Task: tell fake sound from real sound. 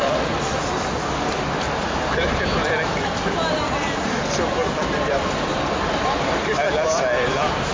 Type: real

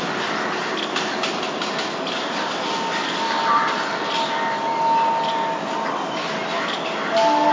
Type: real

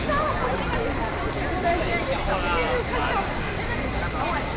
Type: real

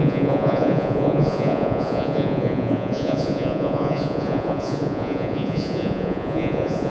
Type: fake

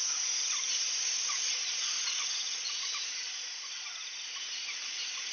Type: fake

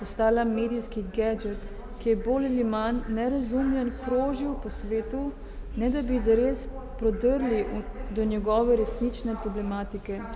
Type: real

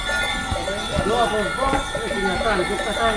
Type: real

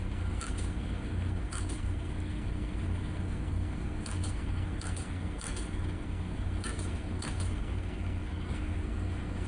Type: fake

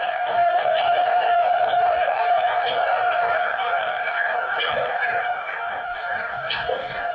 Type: fake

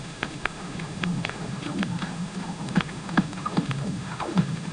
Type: fake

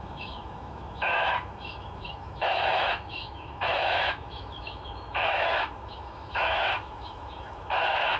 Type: fake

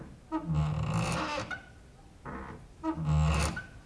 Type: real